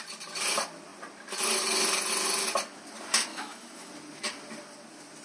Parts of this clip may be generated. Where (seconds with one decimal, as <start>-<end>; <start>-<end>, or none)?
3.3-3.9